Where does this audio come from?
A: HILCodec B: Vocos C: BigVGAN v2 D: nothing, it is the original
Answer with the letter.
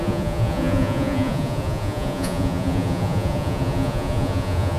B